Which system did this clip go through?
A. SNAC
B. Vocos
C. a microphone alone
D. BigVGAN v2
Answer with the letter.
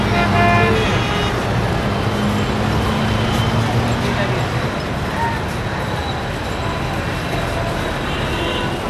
C